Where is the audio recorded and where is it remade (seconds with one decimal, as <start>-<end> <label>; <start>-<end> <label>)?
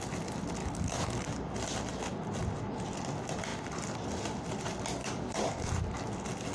0.0-0.6 recorded; 0.6-1.5 remade; 1.5-5.0 recorded; 5.0-5.7 remade; 5.7-6.5 recorded